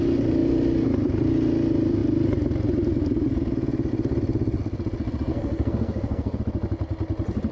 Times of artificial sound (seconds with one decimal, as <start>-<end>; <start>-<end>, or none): 5.3-6.4